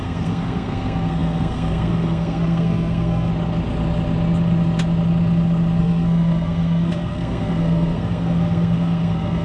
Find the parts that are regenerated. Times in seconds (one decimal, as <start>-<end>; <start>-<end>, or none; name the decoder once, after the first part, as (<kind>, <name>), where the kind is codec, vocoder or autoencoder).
0.0-3.3 (codec, SNAC); 5.8-9.4